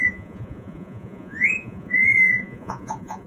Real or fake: fake